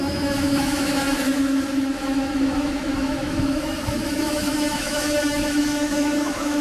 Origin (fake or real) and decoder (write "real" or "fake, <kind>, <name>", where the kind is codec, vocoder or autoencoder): fake, autoencoder, DAC-VAE